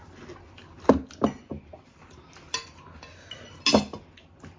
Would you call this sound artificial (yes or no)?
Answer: no